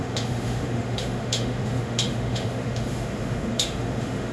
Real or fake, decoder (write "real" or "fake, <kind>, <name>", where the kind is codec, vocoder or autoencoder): fake, autoencoder, DAC-VAE